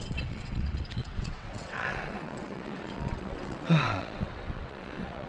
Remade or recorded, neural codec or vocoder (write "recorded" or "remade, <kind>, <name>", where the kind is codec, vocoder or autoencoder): remade, vocoder, WaveNeXt